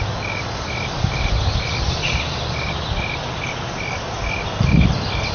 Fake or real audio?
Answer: real